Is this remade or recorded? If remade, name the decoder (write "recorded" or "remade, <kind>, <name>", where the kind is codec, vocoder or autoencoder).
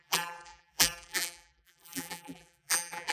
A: remade, vocoder, BigVGAN v2